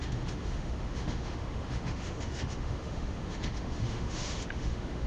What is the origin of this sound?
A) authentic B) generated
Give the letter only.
B